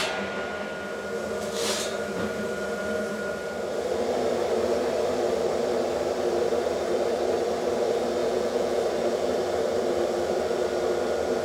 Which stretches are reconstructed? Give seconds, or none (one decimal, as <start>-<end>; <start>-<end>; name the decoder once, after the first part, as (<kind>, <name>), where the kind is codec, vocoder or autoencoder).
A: 8.2-8.8 (vocoder, Vocos)